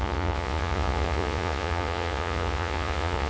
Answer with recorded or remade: remade